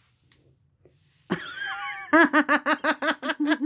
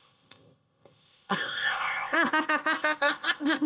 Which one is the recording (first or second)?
first